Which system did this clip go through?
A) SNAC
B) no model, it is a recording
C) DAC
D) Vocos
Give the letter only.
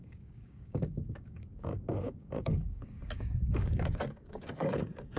C